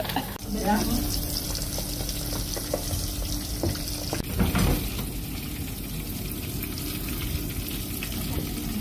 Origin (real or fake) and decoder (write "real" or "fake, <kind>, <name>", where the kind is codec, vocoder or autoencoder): real